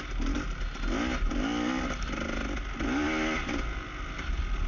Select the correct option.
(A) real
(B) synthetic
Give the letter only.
A